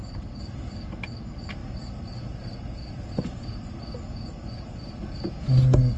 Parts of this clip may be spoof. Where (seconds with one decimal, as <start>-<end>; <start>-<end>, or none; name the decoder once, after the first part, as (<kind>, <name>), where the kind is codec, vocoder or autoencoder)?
none